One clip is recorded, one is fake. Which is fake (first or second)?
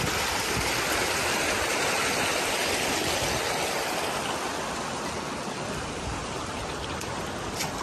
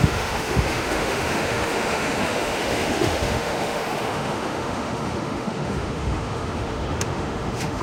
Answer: second